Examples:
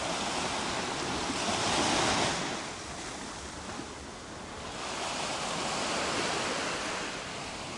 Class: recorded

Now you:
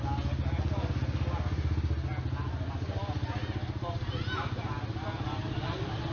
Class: recorded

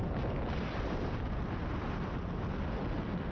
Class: recorded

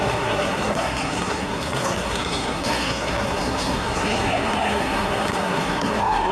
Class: remade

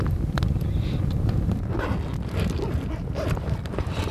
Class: recorded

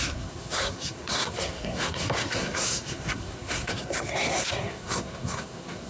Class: remade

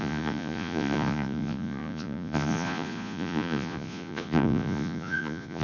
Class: remade